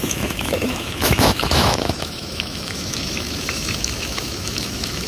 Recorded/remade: remade